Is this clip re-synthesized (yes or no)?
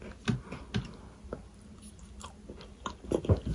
no